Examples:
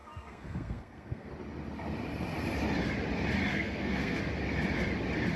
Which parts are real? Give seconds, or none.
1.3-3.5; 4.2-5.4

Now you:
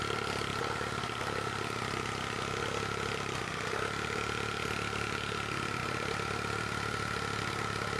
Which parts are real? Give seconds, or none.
0.0-8.0

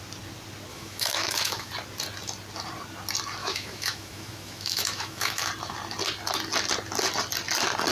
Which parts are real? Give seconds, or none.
0.0-0.7; 1.7-3.4; 5.5-7.9

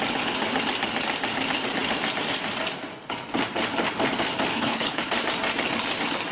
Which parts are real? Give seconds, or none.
0.0-4.5; 5.0-6.3